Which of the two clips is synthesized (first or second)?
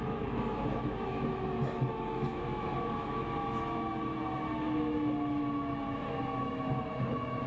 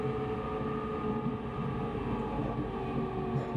first